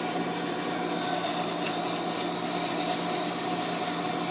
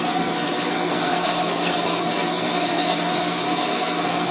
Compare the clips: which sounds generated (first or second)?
second